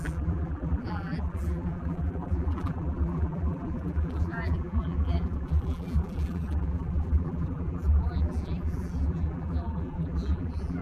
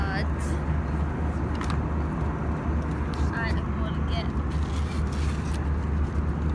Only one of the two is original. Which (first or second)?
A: second